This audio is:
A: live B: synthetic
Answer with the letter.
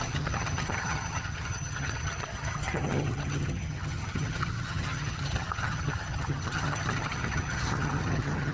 B